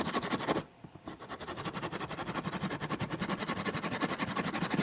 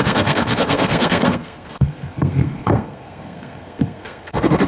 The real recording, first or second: first